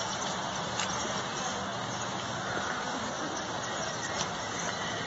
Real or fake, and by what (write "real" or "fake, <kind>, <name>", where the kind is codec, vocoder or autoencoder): real